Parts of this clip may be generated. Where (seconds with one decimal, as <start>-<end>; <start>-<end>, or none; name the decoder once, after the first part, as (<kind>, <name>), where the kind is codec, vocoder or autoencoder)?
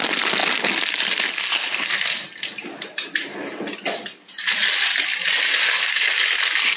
none